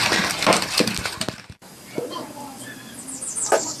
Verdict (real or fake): real